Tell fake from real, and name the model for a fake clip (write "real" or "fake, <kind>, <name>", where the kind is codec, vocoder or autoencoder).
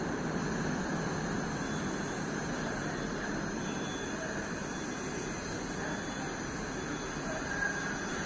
real